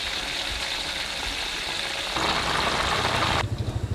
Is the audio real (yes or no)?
yes